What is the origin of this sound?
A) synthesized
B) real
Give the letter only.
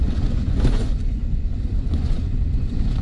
A